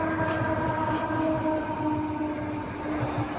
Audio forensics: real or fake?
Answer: real